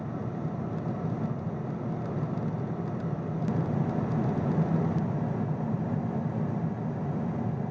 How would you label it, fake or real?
real